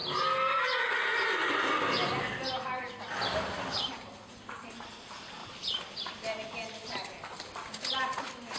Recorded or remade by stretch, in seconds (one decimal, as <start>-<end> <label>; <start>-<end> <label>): 0.0-5.4 recorded; 5.4-6.1 remade; 6.1-8.6 recorded